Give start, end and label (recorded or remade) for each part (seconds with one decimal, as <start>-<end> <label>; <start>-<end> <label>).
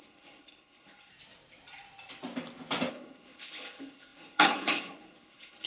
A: 0.0-1.1 remade; 1.1-2.9 recorded; 2.9-5.7 remade